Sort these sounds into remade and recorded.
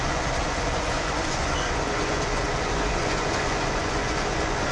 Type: remade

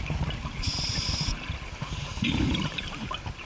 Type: recorded